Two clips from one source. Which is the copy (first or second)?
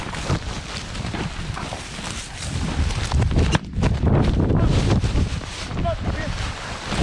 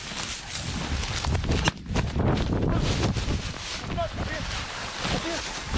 first